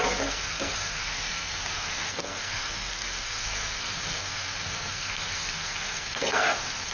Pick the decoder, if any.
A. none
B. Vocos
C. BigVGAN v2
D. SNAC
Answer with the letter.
D